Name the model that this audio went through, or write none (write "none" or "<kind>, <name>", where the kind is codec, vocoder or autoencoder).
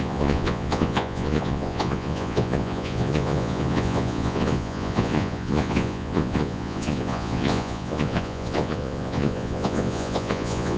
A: vocoder, Vocos